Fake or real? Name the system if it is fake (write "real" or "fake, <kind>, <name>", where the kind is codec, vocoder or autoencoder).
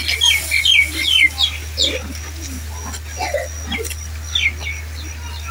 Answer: real